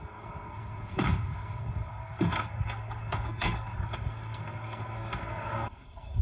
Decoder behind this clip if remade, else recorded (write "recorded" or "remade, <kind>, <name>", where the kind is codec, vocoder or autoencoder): remade, codec, SNAC